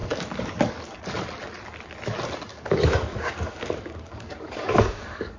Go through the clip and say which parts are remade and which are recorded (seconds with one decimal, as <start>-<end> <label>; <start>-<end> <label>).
0.0-1.0 remade; 1.0-2.5 recorded; 2.5-5.4 remade